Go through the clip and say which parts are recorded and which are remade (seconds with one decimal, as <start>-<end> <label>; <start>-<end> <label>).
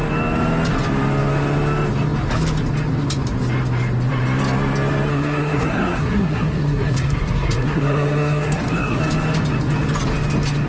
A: 0.0-5.1 recorded; 5.1-9.0 remade; 9.0-10.7 recorded